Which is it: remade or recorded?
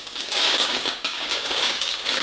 remade